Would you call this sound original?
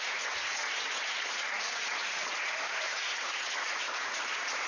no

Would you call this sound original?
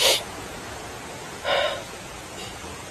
no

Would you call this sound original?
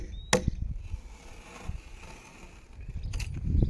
yes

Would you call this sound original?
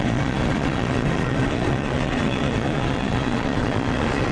no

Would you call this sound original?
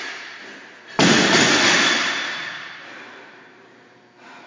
yes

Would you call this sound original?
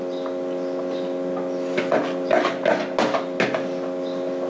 yes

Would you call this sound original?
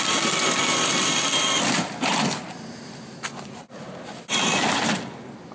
yes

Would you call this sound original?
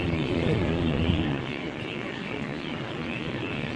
no